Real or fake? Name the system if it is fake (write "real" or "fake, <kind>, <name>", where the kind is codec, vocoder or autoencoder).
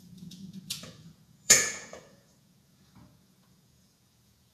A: fake, vocoder, Vocos